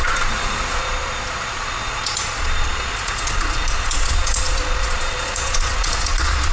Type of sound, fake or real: fake